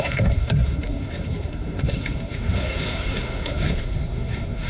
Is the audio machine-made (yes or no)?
yes